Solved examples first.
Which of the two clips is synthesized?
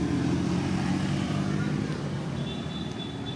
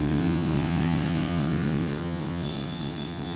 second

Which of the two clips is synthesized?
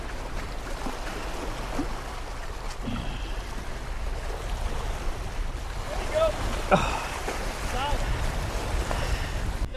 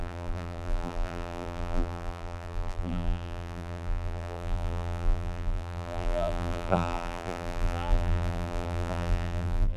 second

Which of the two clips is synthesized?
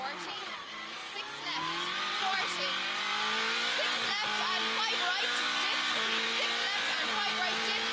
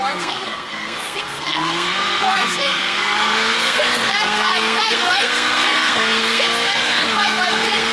second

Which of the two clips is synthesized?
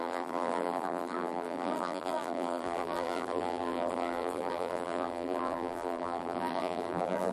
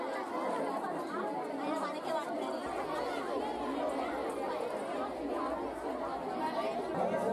first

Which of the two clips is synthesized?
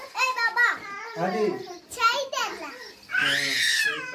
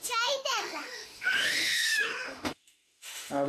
second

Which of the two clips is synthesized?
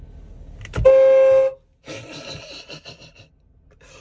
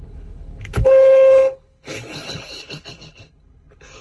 second